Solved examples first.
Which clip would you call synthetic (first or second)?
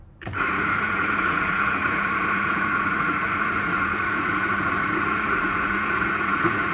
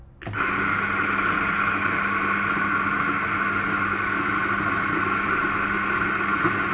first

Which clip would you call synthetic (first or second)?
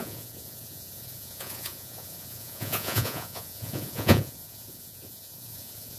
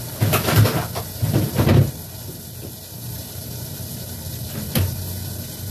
first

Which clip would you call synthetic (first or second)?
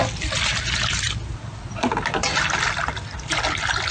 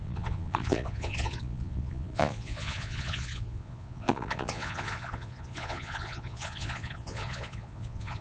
second